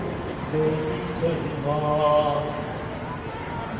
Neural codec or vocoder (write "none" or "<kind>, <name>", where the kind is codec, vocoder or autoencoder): none